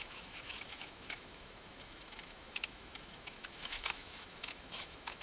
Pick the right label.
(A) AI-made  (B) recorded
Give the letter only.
A